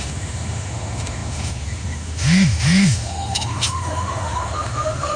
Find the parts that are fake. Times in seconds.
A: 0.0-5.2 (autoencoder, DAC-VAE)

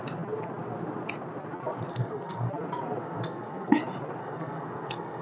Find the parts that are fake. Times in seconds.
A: 1.9-2.5 (codec, SNAC); 3.0-3.7; 4.2-5.2